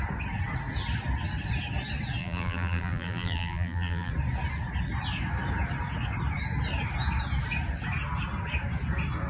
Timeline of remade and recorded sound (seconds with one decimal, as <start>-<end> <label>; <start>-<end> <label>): 0.0-2.2 recorded; 2.2-4.1 remade; 4.1-9.3 recorded